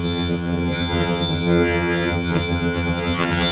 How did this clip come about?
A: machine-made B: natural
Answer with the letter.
A